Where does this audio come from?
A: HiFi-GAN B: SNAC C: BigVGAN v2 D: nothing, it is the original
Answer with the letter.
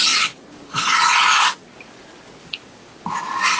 D